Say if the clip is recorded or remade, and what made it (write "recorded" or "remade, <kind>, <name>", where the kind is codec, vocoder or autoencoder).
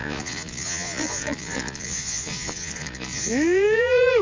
remade, vocoder, Vocos